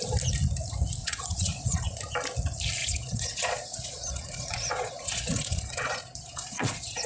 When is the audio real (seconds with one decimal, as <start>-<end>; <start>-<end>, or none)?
0.0-1.0; 2.0-2.8